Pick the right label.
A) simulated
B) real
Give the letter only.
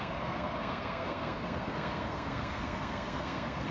A